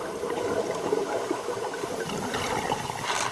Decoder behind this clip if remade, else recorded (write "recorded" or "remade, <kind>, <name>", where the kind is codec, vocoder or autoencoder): recorded